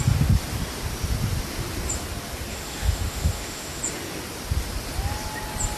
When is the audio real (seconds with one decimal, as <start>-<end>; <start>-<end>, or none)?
0.0-2.5; 3.8-5.8